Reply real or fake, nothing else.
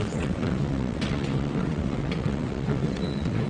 fake